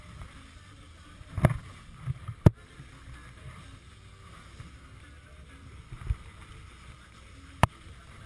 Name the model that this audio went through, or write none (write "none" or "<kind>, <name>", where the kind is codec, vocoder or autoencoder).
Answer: none